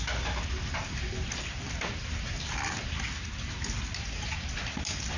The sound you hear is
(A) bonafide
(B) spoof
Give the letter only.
A